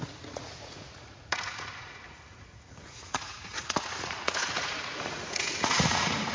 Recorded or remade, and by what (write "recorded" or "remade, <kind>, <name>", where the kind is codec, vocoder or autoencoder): remade, vocoder, Vocos